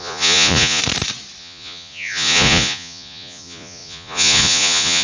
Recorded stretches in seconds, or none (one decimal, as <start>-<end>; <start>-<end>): 0.8-1.4